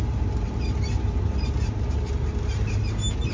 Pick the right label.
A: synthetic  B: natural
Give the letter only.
B